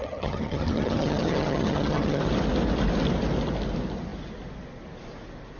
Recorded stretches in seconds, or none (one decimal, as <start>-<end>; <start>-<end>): 2.2-5.6